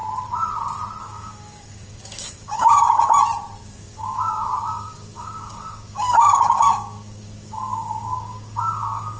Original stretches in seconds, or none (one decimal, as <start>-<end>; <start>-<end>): 0.0-1.0; 3.1-3.6